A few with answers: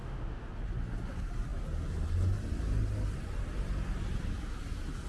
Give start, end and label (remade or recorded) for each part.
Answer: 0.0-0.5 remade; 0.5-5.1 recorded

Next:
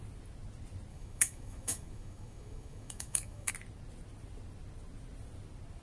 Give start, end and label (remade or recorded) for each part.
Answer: 0.0-0.9 recorded; 0.9-3.5 remade; 3.5-5.8 recorded

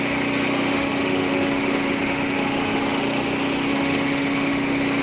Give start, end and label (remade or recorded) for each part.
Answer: 0.0-0.7 recorded; 0.7-3.0 remade; 3.0-3.7 recorded; 3.7-4.5 remade; 4.5-5.0 recorded

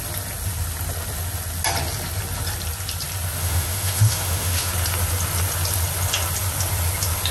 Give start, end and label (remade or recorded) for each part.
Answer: 0.0-3.4 recorded; 3.4-4.7 remade; 4.7-7.3 recorded